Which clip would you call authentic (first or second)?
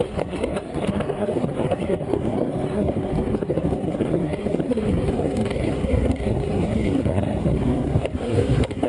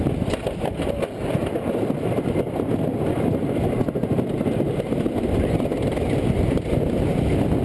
second